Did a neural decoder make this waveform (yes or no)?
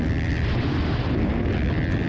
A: no